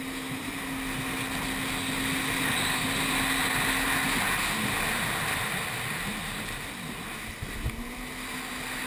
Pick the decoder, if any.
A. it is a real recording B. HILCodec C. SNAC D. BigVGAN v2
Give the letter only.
A